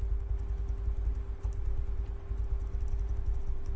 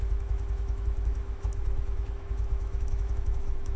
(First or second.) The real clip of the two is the first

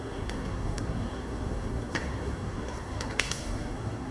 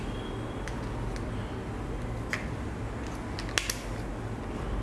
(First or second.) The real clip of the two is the second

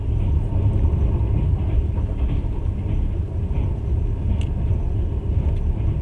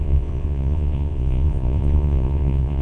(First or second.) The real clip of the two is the first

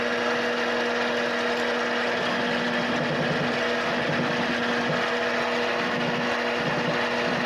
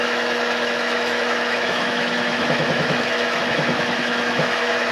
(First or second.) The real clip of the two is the first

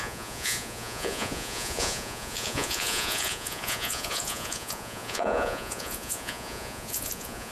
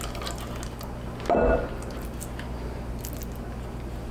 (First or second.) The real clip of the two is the second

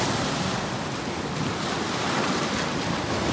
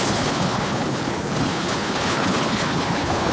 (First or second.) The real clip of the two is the first